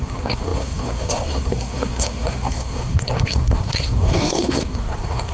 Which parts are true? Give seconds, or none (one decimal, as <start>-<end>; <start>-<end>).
none